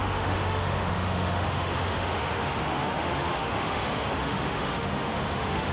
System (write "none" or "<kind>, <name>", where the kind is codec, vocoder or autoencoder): autoencoder, DAC-VAE